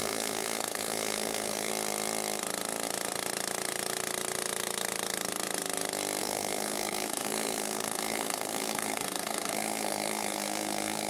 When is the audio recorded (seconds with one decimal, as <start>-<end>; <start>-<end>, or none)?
1.7-6.2